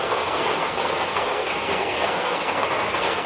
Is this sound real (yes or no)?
no